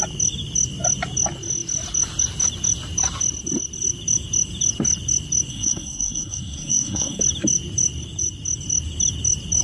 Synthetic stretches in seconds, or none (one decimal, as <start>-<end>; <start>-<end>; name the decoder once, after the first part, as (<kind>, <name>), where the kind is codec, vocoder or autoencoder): 5.5-7.2 (codec, SNAC)